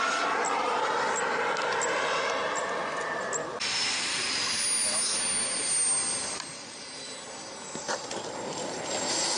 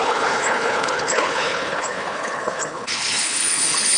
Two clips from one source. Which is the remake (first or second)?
second